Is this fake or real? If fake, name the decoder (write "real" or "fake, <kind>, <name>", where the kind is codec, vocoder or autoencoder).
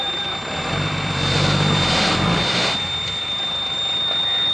fake, vocoder, BigVGAN v2